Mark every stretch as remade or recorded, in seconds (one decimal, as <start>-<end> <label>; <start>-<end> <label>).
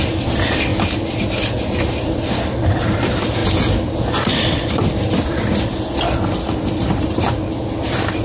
0.0-8.2 recorded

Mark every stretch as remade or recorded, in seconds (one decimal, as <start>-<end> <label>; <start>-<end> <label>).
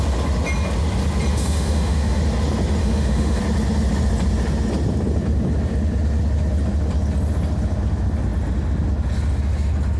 0.0-1.3 recorded; 1.3-2.2 remade; 2.2-2.8 recorded; 2.8-3.4 remade; 3.4-10.0 recorded